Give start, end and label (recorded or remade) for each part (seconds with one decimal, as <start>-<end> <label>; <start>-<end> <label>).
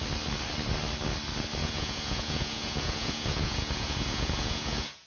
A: 0.0-1.6 recorded; 1.6-5.1 remade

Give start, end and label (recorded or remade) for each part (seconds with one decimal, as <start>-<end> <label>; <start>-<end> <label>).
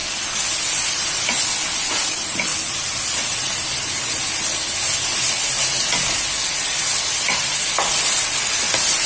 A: 0.0-9.1 recorded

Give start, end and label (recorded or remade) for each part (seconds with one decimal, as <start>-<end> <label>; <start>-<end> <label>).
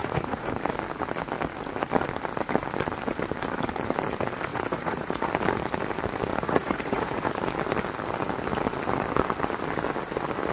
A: 0.0-0.5 remade; 0.5-4.5 recorded; 4.5-5.3 remade; 5.3-6.3 recorded; 6.3-7.3 remade; 7.3-10.5 recorded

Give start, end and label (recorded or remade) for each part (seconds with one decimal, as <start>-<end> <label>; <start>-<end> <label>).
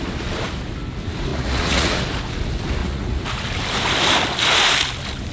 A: 0.0-1.3 recorded; 1.3-2.0 remade; 2.0-2.8 recorded; 2.8-3.4 remade; 3.4-5.3 recorded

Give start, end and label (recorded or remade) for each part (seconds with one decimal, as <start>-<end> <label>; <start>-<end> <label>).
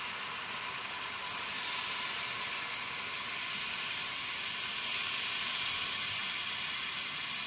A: 0.0-7.5 recorded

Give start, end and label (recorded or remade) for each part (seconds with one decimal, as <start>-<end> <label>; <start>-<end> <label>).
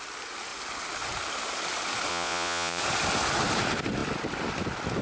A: 0.0-2.1 recorded; 2.1-2.8 remade; 2.8-5.0 recorded